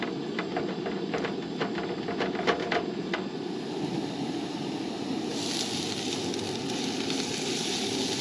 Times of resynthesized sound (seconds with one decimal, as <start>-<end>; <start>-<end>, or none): none